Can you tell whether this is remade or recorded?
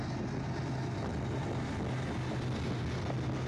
recorded